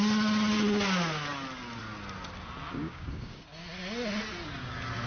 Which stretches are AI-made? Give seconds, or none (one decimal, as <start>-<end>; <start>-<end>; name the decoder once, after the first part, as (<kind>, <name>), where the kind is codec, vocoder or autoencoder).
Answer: 2.8-3.4 (codec, DAC)